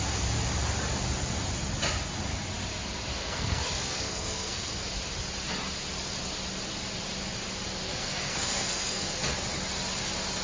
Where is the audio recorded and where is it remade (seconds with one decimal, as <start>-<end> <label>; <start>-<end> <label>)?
0.0-3.2 recorded; 3.2-4.7 remade; 4.7-7.9 recorded; 7.9-9.2 remade; 9.2-10.4 recorded